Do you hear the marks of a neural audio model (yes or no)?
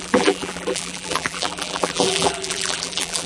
yes